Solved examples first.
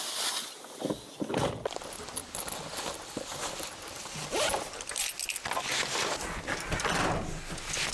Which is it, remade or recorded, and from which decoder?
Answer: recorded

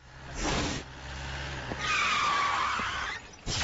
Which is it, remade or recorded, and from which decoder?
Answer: recorded